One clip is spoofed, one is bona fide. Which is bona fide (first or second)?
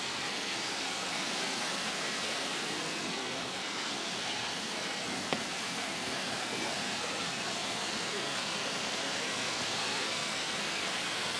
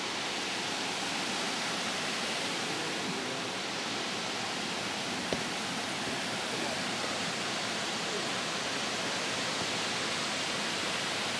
second